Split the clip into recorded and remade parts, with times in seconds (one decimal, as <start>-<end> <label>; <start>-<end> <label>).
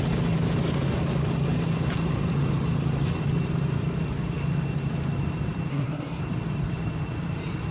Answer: 0.0-5.7 recorded; 5.7-6.2 remade; 6.2-7.7 recorded